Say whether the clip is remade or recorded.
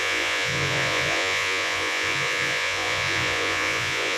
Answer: remade